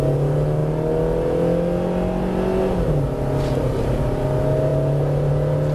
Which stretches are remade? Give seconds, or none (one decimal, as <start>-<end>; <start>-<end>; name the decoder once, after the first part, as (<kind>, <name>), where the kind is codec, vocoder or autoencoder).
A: none